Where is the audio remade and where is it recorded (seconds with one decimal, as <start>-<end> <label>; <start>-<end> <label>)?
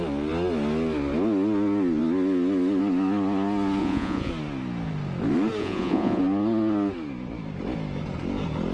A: 0.0-3.8 recorded; 3.8-4.3 remade; 4.3-5.6 recorded; 5.6-6.2 remade; 6.2-8.7 recorded